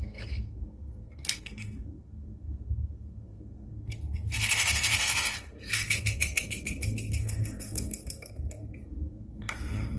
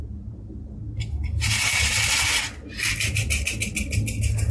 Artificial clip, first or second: first